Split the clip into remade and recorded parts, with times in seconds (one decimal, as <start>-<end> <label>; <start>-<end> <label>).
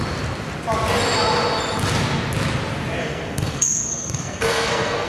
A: 0.0-3.0 recorded; 3.0-5.1 remade